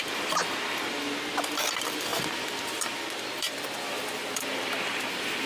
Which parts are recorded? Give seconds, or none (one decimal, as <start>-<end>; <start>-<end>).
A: 0.4-1.6